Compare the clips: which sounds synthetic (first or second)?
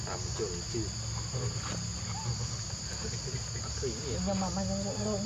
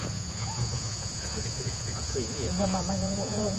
second